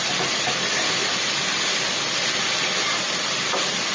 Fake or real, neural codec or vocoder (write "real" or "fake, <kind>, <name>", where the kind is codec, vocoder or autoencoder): real